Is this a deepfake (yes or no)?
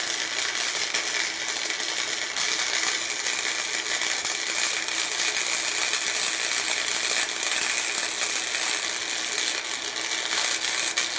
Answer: no